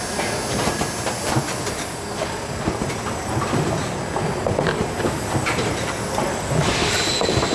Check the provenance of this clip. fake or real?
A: real